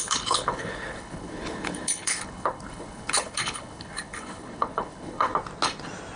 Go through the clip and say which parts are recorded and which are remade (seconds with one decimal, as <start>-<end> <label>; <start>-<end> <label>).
0.0-5.3 remade; 5.3-6.2 recorded